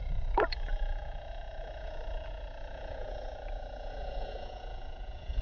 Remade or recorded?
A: remade